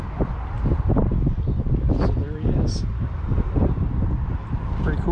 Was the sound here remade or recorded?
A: recorded